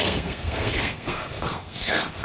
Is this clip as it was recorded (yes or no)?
no